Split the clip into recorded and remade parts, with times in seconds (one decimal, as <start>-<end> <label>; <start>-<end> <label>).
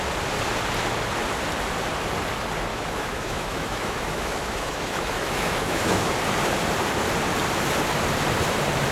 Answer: 0.0-2.7 recorded; 2.7-6.1 remade; 6.1-8.9 recorded